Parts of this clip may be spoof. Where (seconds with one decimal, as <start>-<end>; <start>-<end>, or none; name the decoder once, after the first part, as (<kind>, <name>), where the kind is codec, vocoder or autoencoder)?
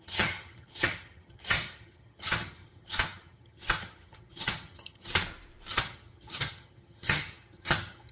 0.0-5.1 (vocoder, HiFi-GAN); 5.7-8.1